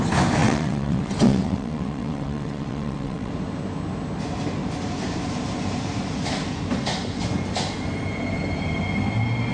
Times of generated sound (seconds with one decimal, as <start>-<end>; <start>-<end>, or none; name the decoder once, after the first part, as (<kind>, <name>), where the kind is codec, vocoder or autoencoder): 0.4-3.3 (vocoder, WaveNeXt)